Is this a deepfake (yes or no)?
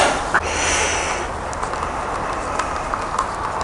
no